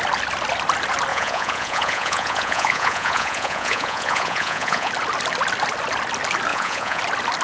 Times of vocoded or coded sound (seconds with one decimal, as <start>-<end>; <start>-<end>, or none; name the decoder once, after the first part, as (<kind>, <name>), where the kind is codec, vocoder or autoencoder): 1.1-4.9 (vocoder, Vocos); 6.5-7.0